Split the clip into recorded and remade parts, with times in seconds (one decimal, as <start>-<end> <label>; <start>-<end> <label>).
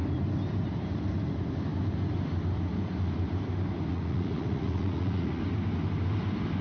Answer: 0.0-3.9 recorded; 3.9-5.4 remade; 5.4-6.6 recorded